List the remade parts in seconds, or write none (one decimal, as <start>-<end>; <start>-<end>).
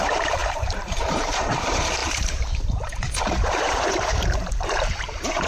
0.0-5.5